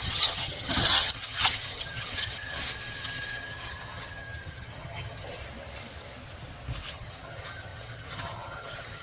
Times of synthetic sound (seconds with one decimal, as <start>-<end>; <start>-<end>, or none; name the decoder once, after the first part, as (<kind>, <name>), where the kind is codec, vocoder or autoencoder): 0.0-5.4 (vocoder, HiFi-GAN); 6.9-9.0